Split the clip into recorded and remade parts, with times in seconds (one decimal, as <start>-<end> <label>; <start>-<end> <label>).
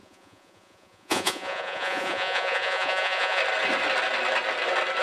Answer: 0.0-3.4 remade; 3.4-5.0 recorded